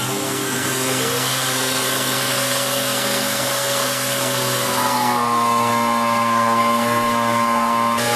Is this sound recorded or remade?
remade